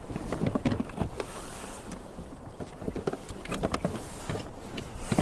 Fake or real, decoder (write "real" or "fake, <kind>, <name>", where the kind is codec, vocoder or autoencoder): real